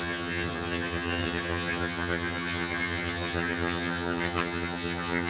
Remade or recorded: remade